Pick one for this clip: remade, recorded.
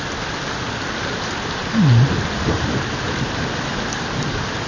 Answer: remade